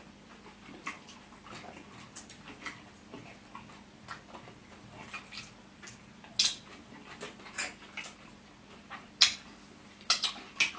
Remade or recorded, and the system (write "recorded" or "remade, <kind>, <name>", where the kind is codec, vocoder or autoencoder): recorded